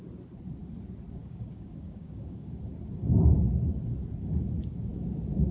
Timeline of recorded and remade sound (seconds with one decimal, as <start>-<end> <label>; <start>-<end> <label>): 0.0-1.2 recorded; 1.2-2.6 remade; 2.6-5.5 recorded